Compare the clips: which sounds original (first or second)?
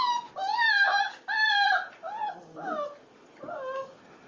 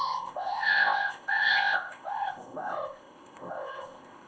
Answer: first